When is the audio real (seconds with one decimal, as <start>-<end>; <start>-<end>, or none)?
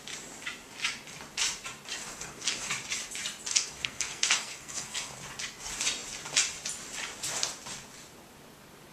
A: 0.0-2.0; 2.7-3.5; 5.1-8.9